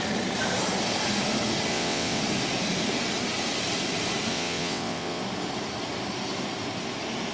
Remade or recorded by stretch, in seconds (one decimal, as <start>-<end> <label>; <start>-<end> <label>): 0.0-1.7 recorded; 1.7-2.2 remade; 2.2-4.3 recorded; 4.3-5.2 remade; 5.2-7.3 recorded